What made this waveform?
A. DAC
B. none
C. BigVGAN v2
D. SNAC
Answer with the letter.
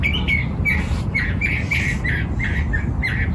B